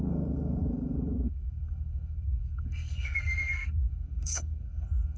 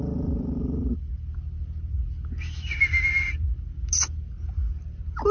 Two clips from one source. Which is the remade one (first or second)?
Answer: first